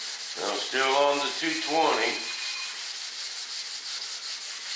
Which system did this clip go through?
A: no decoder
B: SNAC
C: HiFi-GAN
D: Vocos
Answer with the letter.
A